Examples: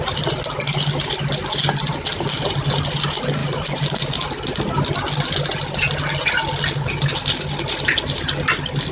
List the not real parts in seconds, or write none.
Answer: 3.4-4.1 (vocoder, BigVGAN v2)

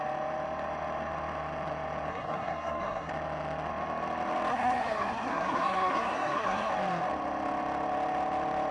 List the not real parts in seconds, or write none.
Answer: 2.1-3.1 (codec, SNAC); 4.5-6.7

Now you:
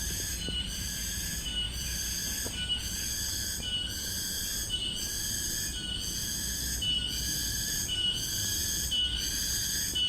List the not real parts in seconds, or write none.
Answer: 7.4-8.6 (vocoder, BigVGAN v2)